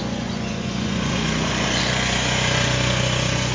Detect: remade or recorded remade